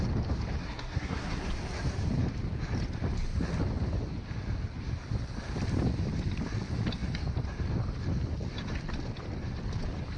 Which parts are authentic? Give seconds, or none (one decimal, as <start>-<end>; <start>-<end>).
0.0-0.6; 1.4-10.2